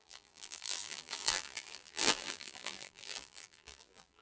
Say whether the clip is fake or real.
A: fake